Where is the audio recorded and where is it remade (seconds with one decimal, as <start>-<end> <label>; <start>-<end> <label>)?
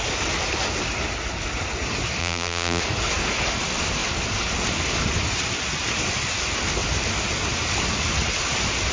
0.0-2.2 recorded; 2.2-2.8 remade; 2.8-8.9 recorded